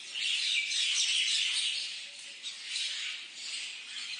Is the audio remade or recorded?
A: recorded